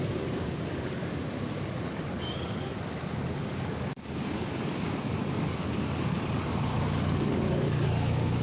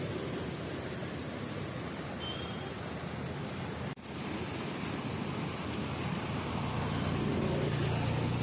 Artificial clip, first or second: first